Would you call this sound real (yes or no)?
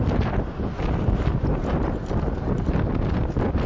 yes